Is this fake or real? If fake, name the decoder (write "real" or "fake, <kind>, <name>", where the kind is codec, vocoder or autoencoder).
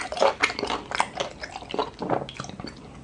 real